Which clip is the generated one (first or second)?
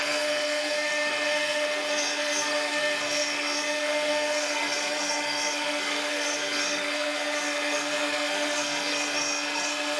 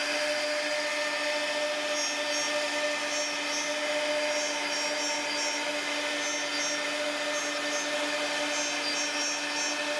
first